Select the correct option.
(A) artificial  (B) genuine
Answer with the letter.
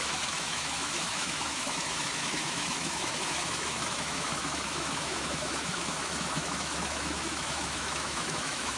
A